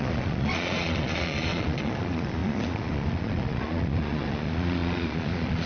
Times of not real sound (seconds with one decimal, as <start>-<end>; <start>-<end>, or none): 0.0-5.7